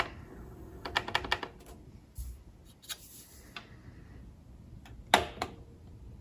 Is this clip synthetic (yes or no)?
no